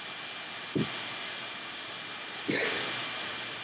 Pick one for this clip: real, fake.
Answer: real